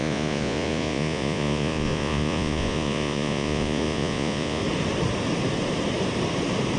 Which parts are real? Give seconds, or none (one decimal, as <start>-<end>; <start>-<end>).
4.6-6.8